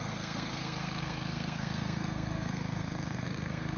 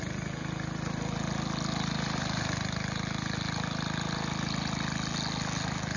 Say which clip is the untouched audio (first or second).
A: second